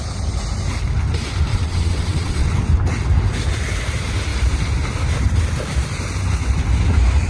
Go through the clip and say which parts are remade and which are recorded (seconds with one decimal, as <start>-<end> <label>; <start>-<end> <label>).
0.0-1.5 recorded; 1.5-2.5 remade; 2.5-7.3 recorded